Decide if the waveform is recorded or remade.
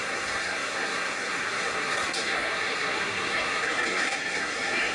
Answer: remade